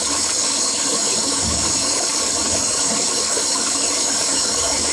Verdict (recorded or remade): remade